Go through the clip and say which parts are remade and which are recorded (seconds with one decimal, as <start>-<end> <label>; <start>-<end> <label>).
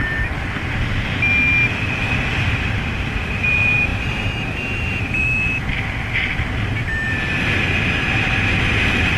0.0-2.4 recorded; 2.4-3.2 remade; 3.2-3.9 recorded; 3.9-5.8 remade; 5.8-9.2 recorded